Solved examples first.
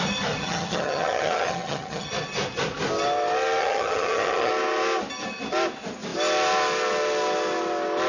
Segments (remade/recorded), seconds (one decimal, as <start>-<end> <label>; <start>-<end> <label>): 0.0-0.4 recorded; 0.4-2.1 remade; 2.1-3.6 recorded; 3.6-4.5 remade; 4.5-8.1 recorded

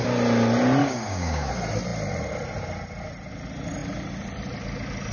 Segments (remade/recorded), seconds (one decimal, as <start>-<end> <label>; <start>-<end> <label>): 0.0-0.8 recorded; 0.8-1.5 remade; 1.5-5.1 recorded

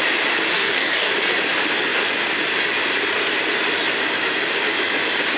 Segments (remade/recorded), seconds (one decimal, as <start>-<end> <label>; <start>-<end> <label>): 0.0-0.5 recorded; 0.5-1.1 remade; 1.1-5.4 recorded

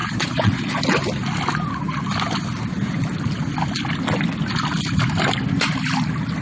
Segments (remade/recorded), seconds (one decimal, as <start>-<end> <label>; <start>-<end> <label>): 0.0-0.8 remade; 0.8-6.4 recorded